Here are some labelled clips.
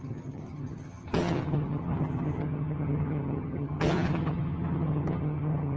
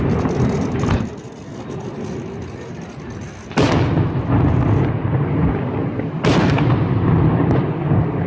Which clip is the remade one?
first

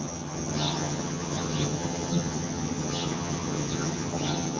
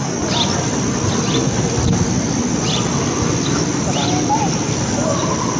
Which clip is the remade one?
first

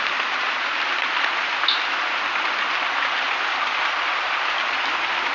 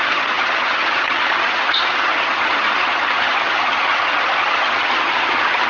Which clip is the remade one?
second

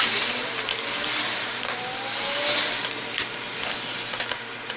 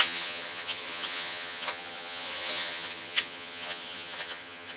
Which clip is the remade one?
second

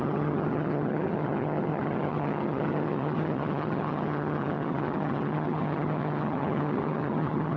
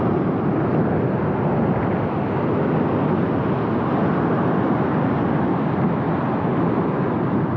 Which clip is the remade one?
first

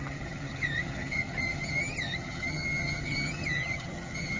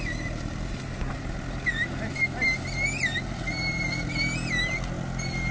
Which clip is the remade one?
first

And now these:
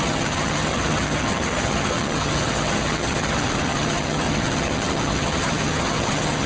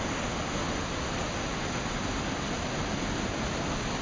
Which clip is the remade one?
first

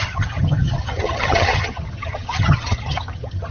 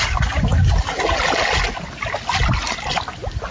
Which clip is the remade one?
first